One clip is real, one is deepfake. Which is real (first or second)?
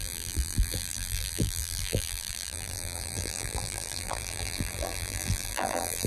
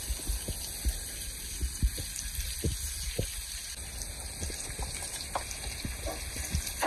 second